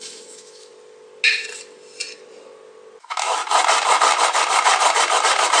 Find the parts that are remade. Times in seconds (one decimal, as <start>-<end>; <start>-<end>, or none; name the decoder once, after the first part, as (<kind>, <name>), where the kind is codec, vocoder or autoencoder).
0.0-0.7 (autoencoder, DAC-VAE); 3.0-3.4